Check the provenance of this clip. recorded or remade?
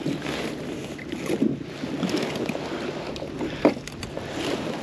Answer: recorded